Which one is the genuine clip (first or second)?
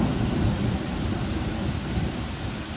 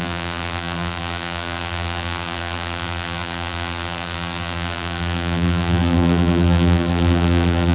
first